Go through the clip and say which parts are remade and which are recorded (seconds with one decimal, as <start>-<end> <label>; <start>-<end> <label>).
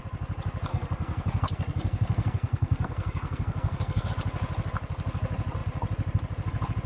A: 0.0-0.7 recorded; 0.7-4.1 remade; 4.1-6.9 recorded